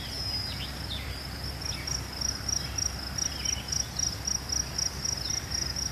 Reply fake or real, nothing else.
real